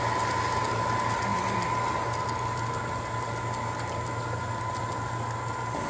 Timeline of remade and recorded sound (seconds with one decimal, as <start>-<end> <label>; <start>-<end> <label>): 0.0-5.9 recorded